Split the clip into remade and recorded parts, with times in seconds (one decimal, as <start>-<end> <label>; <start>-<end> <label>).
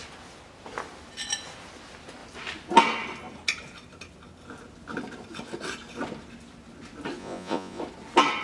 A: 0.0-7.2 recorded; 7.2-7.8 remade; 7.8-8.4 recorded